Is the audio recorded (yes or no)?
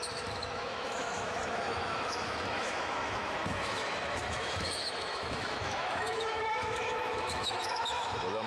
no